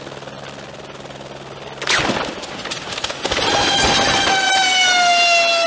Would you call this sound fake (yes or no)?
no